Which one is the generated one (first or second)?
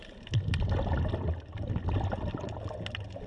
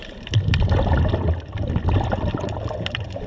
second